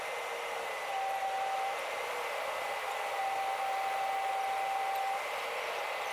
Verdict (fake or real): real